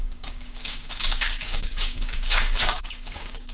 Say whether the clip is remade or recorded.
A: remade